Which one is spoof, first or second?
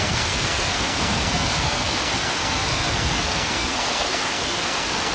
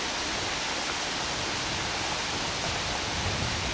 first